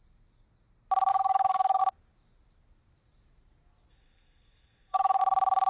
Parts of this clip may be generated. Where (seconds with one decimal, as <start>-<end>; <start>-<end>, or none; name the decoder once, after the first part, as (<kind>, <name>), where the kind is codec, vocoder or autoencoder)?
1.1-1.8 (codec, SNAC); 3.9-5.2